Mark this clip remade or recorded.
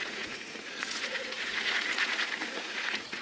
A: remade